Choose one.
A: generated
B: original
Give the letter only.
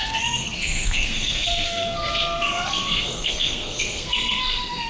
A